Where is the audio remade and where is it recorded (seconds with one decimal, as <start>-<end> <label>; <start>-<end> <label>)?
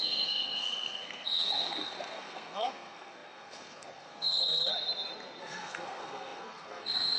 0.0-4.7 remade; 4.7-5.4 recorded; 5.4-7.2 remade